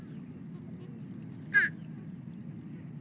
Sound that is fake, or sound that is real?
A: real